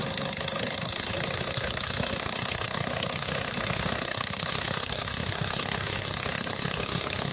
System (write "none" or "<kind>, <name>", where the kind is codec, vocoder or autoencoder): codec, SNAC